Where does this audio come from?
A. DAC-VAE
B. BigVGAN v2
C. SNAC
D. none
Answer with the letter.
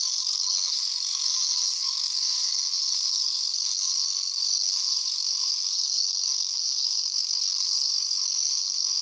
C